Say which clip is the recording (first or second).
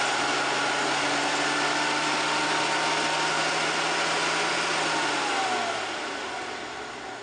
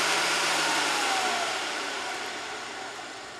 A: first